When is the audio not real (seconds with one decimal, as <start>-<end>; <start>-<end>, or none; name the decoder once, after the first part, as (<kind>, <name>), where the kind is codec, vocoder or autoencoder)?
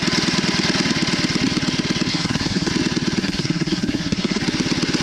2.1-2.7 (codec, SNAC); 3.2-4.4